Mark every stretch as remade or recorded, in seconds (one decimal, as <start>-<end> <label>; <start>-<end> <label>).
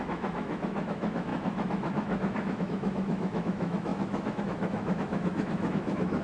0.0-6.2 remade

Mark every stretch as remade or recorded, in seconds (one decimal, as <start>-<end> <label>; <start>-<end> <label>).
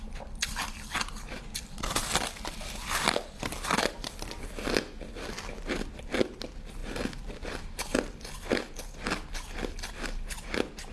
0.0-10.9 recorded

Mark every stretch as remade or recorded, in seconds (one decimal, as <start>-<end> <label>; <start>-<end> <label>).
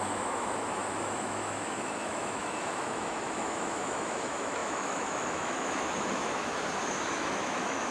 0.0-6.5 remade; 6.5-7.1 recorded; 7.1-7.9 remade